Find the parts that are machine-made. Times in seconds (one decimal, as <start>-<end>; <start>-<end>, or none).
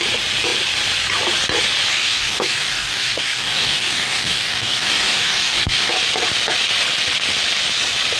1.9-5.9